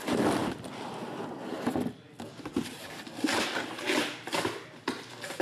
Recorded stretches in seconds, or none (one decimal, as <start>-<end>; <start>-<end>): 0.0-0.4; 3.6-5.4